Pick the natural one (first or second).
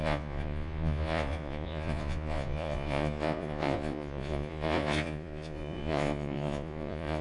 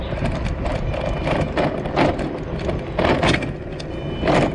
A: second